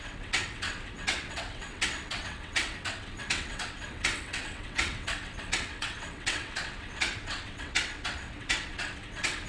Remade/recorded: remade